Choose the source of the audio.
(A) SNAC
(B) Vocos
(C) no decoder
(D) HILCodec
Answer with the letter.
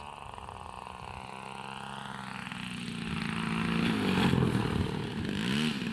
C